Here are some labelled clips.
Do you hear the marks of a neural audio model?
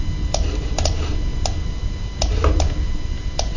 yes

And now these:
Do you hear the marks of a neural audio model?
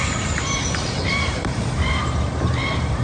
yes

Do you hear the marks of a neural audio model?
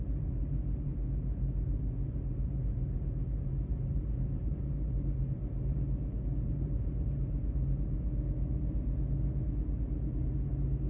yes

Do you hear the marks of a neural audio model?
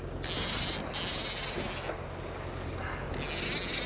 no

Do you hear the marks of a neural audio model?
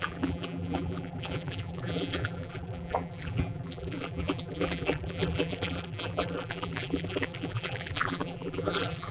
yes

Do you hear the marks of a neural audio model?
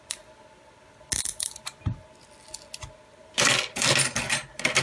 no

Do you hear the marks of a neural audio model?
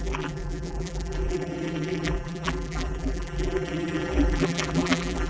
yes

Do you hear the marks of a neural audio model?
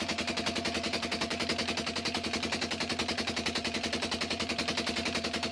yes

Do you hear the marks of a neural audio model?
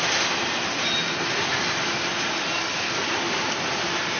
no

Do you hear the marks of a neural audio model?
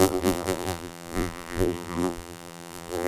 yes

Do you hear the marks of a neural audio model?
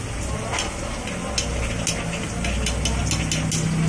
no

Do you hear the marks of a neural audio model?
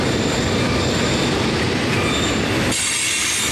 no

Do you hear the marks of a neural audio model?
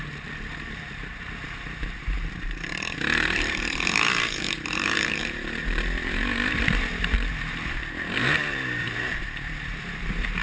yes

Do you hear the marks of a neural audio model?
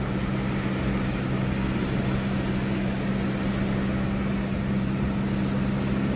no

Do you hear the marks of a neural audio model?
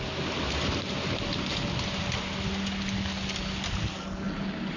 no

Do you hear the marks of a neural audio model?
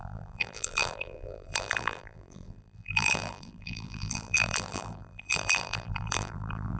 yes